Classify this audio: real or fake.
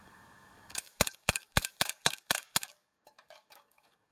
fake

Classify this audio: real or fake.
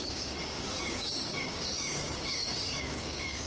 fake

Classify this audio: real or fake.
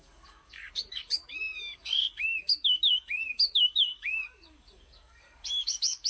fake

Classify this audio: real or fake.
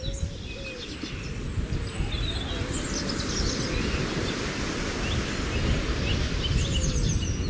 real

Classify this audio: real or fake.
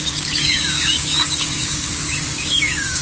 fake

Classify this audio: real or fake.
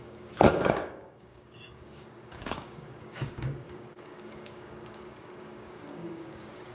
fake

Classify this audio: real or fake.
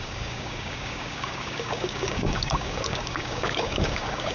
fake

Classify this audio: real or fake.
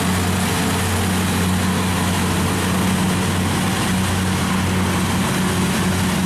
real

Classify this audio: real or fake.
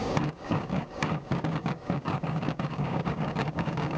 fake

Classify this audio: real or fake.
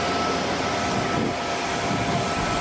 real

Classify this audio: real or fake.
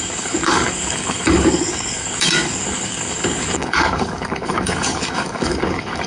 fake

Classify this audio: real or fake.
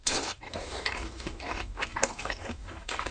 fake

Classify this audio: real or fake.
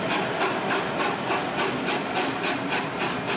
real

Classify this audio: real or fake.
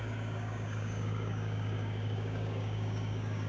fake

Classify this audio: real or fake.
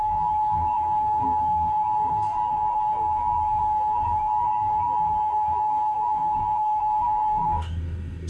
fake